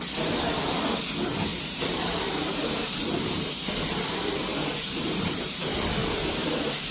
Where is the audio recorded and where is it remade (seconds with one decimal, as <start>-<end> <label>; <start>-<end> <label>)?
0.0-1.5 recorded; 1.5-5.6 remade; 5.6-6.0 recorded; 6.0-6.9 remade